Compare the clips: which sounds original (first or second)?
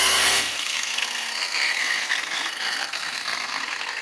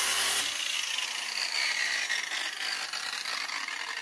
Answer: second